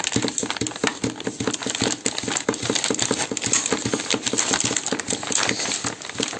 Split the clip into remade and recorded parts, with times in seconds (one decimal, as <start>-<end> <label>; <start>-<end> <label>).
0.0-6.4 recorded